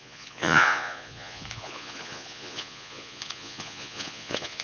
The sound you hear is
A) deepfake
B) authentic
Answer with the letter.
A